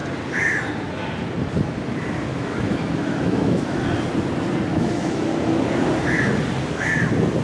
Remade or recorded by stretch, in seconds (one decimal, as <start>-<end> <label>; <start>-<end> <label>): 0.0-2.3 recorded; 2.3-3.8 remade; 3.8-4.7 recorded; 4.7-5.3 remade; 5.3-7.4 recorded